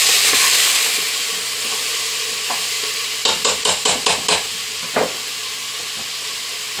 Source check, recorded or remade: recorded